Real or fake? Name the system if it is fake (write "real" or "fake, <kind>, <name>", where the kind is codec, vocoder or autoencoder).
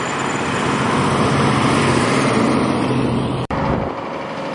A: fake, vocoder, BigVGAN v2